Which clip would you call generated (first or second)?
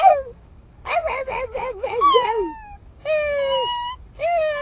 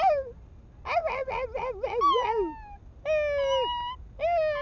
first